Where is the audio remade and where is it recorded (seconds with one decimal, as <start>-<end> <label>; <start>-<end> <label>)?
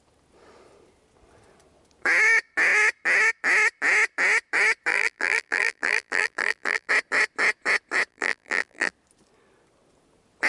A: 0.0-4.9 recorded; 4.9-6.9 remade; 6.9-8.1 recorded; 8.1-8.9 remade; 8.9-10.5 recorded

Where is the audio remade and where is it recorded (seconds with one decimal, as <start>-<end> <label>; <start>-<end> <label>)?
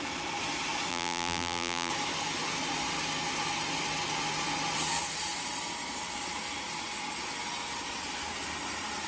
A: 0.0-0.9 recorded; 0.9-1.9 remade; 1.9-9.1 recorded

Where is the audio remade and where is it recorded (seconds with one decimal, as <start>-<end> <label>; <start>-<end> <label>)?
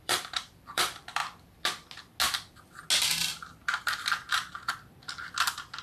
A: 0.0-1.2 remade; 1.2-4.7 recorded; 4.7-5.8 remade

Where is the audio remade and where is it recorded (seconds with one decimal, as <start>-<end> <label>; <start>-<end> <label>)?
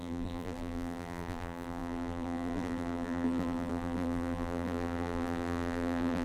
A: 0.0-6.2 remade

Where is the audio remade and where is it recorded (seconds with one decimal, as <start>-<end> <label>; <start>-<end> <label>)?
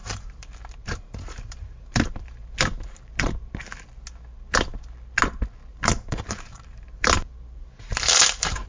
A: 0.0-3.1 remade; 3.1-5.7 recorded; 5.7-7.3 remade; 7.3-7.9 recorded; 7.9-8.7 remade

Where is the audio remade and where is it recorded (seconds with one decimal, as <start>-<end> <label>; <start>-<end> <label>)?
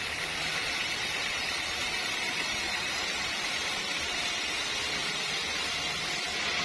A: 0.0-0.6 recorded; 0.6-4.6 remade; 4.6-5.0 recorded; 5.0-5.7 remade; 5.7-6.6 recorded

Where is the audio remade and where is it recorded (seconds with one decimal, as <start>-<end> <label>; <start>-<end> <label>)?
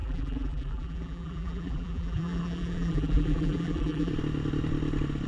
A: 0.0-4.1 remade; 4.1-5.3 recorded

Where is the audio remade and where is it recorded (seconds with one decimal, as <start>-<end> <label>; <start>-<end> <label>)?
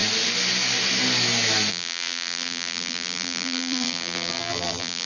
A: 0.0-1.7 recorded; 1.7-5.1 remade